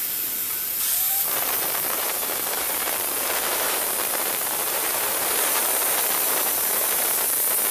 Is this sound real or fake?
fake